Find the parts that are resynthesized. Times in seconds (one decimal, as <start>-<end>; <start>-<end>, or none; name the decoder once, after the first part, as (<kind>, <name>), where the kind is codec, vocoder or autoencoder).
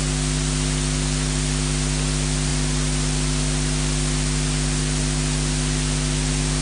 none